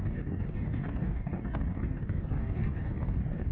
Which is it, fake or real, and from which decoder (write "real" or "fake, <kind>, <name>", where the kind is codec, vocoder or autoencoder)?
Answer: fake, codec, DAC